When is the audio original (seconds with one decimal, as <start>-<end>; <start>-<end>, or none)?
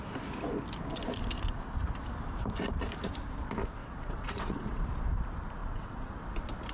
0.0-3.8; 4.8-5.6; 6.1-6.7